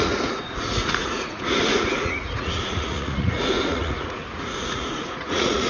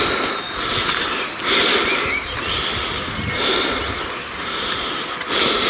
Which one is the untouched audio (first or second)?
second